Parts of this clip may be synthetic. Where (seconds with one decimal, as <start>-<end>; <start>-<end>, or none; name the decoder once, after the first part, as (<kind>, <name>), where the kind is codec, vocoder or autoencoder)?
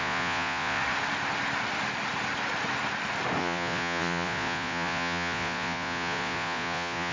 0.0-0.8 (vocoder, Vocos); 3.4-7.1